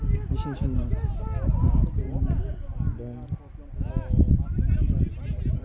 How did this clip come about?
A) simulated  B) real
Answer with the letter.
B